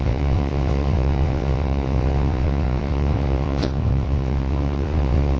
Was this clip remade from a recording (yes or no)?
yes